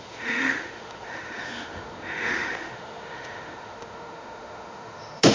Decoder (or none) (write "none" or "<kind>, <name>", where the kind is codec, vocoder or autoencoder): autoencoder, DAC-VAE